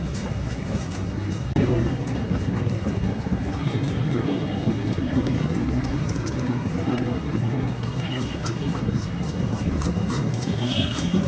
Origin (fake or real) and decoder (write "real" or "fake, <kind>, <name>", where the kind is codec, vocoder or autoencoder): fake, codec, SNAC